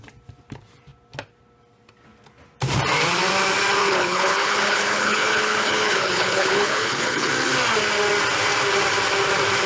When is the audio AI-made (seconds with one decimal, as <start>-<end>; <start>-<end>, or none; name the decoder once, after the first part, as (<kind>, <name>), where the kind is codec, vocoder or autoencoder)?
3.8-7.3 (codec, HILCodec)